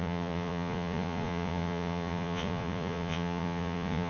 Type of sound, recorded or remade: remade